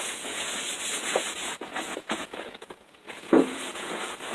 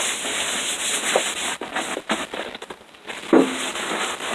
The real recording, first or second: second